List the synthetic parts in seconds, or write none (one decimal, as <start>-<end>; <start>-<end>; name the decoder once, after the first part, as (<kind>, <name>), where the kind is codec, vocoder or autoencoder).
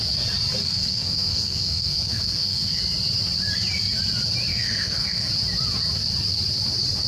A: 0.6-2.8 (codec, SNAC); 4.5-5.3